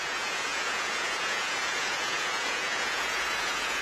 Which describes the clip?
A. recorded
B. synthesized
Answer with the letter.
B